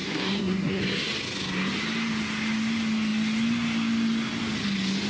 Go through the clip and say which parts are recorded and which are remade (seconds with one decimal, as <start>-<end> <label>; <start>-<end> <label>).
0.0-0.8 remade; 0.8-5.1 recorded